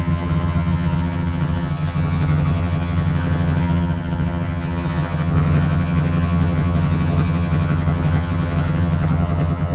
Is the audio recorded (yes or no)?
no